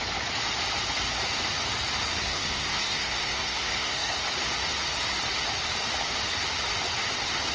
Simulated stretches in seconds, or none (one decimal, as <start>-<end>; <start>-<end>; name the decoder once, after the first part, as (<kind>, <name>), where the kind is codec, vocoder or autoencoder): 2.3-4.2 (codec, SNAC)